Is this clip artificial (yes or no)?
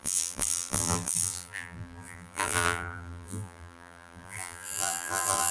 yes